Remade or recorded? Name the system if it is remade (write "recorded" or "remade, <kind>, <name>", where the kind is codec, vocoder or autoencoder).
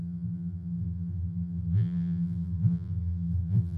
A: remade, vocoder, BigVGAN v2